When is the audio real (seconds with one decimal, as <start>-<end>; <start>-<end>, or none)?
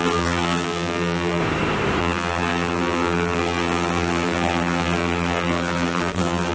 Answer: 1.4-2.0